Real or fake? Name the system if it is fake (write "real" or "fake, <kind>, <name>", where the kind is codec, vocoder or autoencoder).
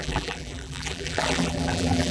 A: fake, vocoder, BigVGAN v2